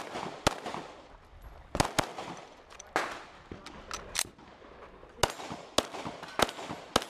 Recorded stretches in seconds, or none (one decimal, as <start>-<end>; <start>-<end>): 0.0-7.1